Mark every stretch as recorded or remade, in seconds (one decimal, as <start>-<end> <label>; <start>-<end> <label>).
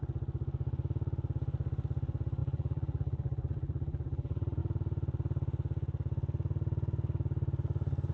0.0-2.4 recorded; 2.4-4.6 remade; 4.6-8.1 recorded